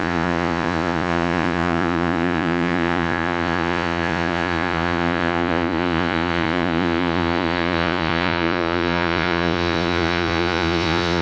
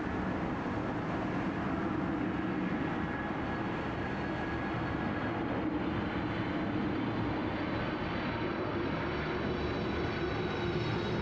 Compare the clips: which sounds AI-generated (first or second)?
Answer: first